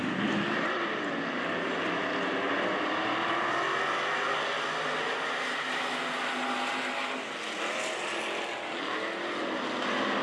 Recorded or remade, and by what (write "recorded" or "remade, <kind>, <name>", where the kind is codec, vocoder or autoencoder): recorded